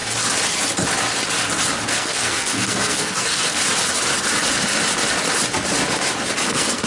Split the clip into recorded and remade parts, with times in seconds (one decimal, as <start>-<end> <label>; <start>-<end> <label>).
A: 0.0-1.9 recorded; 1.9-3.6 remade; 3.6-6.5 recorded; 6.5-6.9 remade